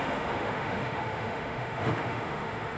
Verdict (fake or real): fake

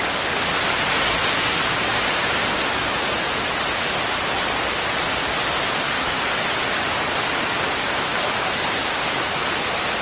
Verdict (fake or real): real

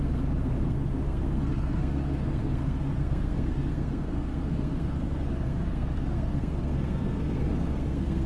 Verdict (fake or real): fake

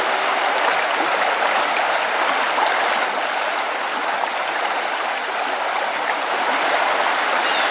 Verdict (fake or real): real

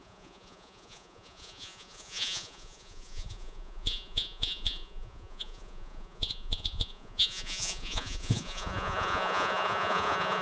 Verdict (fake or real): fake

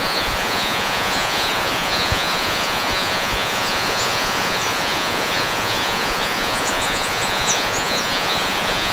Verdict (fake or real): fake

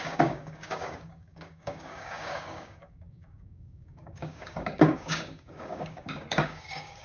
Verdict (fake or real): fake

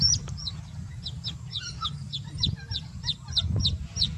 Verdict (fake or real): real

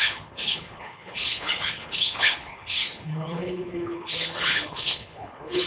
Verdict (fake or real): fake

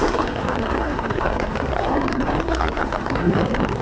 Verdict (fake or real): fake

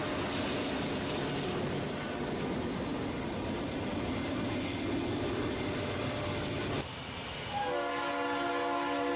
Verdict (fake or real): real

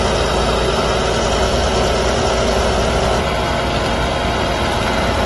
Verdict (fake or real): real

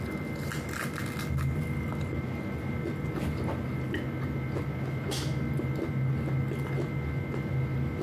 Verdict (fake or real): real